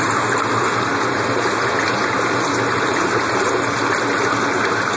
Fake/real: real